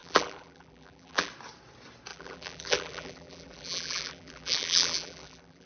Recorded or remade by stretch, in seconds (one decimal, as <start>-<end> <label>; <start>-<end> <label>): 0.0-1.3 remade; 1.3-2.1 recorded; 2.1-5.7 remade

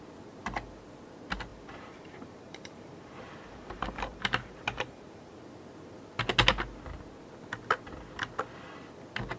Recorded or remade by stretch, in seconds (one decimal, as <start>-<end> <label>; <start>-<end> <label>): 0.0-1.5 recorded; 1.5-5.3 remade; 5.3-9.4 recorded

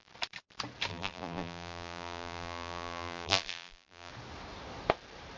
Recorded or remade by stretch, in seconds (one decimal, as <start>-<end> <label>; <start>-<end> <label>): 0.0-0.9 recorded; 0.9-4.1 remade; 4.1-5.4 recorded

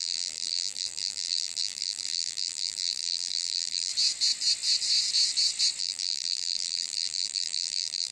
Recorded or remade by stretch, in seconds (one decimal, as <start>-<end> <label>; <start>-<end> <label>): 0.0-3.9 remade; 3.9-5.8 recorded; 5.8-8.1 remade

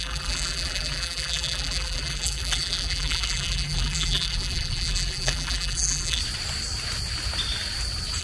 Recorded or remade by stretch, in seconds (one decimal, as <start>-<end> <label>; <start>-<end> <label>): 0.0-6.2 remade; 6.2-8.2 recorded

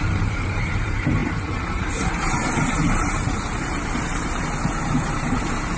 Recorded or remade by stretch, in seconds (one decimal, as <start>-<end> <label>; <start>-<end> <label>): 0.0-5.8 remade